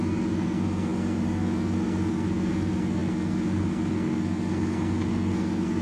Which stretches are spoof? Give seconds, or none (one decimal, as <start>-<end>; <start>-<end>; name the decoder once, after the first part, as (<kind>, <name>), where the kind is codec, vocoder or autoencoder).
0.0-5.8 (codec, SNAC)